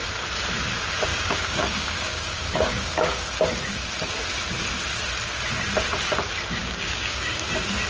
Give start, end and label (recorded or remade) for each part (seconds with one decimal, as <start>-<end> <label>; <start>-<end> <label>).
0.0-1.1 recorded; 1.1-3.3 remade; 3.3-6.6 recorded; 6.6-7.5 remade; 7.5-7.9 recorded